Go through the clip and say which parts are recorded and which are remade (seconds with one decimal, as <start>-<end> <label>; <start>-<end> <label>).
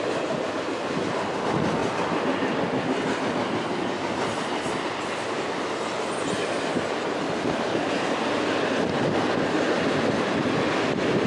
0.0-11.3 recorded